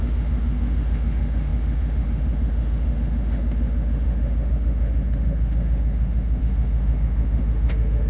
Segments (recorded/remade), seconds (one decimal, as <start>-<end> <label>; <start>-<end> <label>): 0.0-8.1 remade

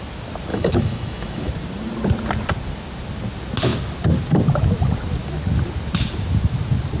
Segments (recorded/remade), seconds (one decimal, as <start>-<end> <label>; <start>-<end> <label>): 0.0-0.5 recorded; 0.5-1.5 remade; 1.5-7.0 recorded

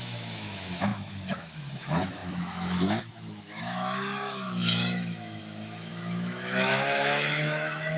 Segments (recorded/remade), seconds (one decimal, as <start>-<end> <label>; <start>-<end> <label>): 0.0-8.0 remade

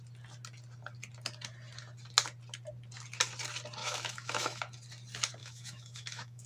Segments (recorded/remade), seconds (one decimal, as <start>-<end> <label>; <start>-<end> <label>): 0.0-3.8 recorded; 3.8-4.6 remade; 4.6-5.4 recorded; 5.4-6.5 remade

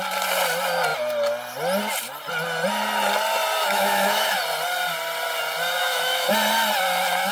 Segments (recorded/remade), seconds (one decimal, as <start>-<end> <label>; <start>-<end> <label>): 0.0-3.6 recorded; 3.6-4.4 remade; 4.4-5.8 recorded; 5.8-6.3 remade; 6.3-7.3 recorded

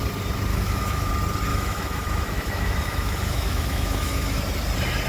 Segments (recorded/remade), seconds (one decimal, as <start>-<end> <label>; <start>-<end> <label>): 0.0-0.5 recorded; 0.5-1.1 remade; 1.1-1.5 recorded; 1.5-4.4 remade; 4.4-5.1 recorded

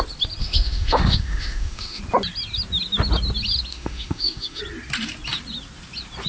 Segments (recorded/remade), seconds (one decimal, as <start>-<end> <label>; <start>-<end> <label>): 0.0-0.4 recorded; 0.4-2.0 remade; 2.0-3.7 recorded; 3.7-4.6 remade; 4.6-6.3 recorded

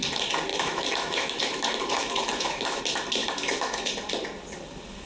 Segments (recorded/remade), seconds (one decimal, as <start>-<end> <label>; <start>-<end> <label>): 0.0-0.5 recorded; 0.5-2.8 remade; 2.8-3.2 recorded; 3.2-3.9 remade; 3.9-5.1 recorded